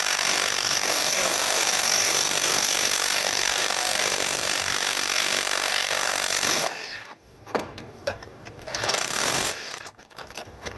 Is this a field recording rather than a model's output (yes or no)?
no